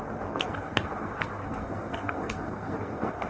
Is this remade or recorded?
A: remade